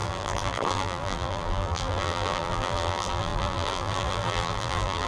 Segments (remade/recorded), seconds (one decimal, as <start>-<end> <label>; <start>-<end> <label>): 0.0-5.1 remade